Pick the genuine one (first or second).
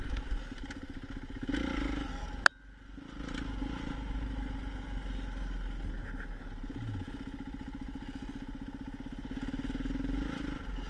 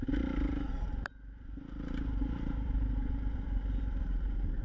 first